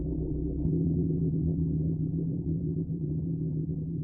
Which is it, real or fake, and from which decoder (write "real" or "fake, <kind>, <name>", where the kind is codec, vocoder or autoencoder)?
fake, vocoder, BigVGAN v2